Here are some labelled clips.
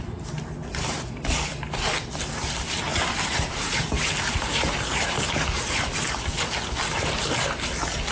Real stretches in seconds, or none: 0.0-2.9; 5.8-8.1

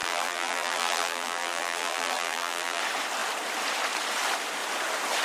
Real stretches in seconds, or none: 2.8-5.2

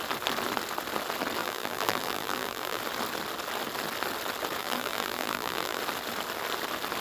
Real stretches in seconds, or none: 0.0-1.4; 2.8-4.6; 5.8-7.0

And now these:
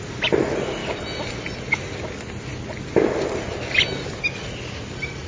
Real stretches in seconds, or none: 0.0-5.3

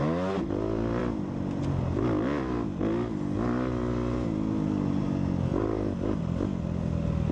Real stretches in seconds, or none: 0.0-5.5; 6.2-7.3

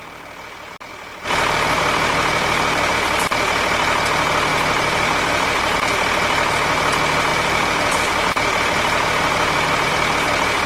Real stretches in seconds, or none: 0.0-0.9; 2.9-4.5; 5.8-7.3; 9.9-10.7

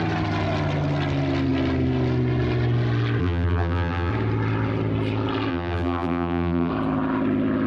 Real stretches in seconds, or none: 0.0-3.2; 4.1-5.5; 6.7-7.7